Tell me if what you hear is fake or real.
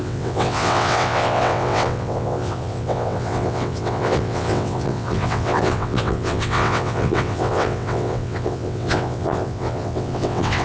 fake